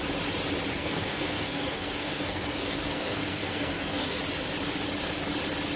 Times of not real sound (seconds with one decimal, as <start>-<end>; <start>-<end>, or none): 0.7-4.2